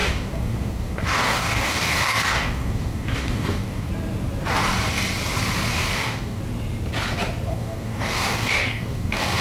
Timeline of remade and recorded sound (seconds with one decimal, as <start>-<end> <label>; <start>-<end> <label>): 0.0-3.9 remade; 3.9-5.7 recorded; 5.7-6.4 remade; 6.4-7.5 recorded; 7.5-9.4 remade